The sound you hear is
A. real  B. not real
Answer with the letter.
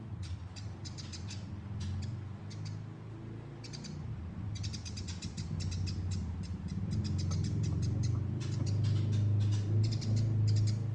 A